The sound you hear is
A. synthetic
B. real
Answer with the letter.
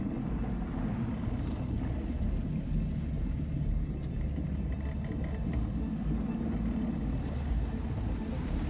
B